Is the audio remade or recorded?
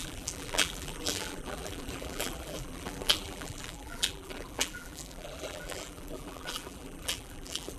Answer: remade